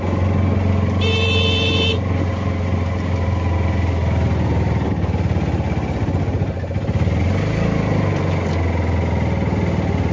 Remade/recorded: recorded